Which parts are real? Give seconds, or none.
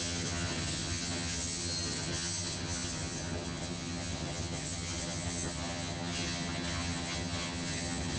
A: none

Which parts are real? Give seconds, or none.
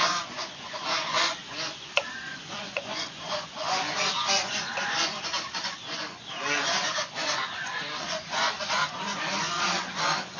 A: none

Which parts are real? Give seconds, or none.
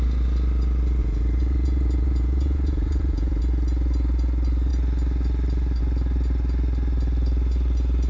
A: 0.0-1.0; 3.4-8.1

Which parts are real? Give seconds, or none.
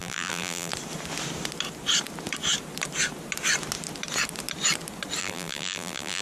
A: 0.7-5.2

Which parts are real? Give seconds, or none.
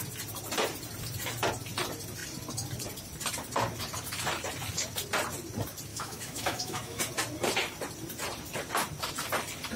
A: 0.0-5.9; 7.0-9.8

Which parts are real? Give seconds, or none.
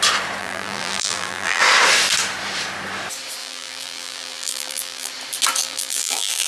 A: 0.0-0.4; 1.6-3.4; 5.1-5.6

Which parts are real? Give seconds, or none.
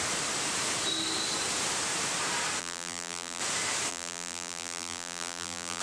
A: 0.0-2.6; 3.4-3.9